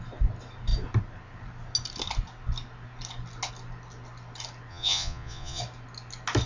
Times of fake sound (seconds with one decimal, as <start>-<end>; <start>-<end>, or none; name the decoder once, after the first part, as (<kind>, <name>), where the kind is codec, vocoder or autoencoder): 4.7-5.6 (vocoder, Vocos)